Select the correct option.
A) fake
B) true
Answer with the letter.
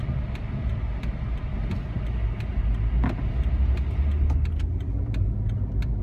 B